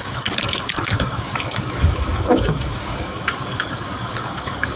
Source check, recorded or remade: remade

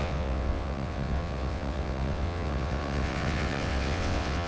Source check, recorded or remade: remade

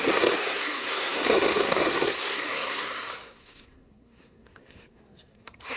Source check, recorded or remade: remade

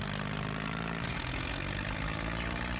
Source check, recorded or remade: recorded